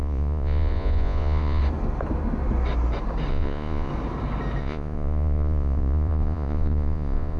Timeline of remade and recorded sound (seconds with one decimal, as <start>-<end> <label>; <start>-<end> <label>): 0.0-1.6 remade; 1.6-3.3 recorded; 3.3-3.9 remade; 3.9-4.6 recorded; 4.6-7.4 remade